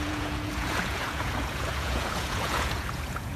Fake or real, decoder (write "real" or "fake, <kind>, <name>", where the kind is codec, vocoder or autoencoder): fake, vocoder, Vocos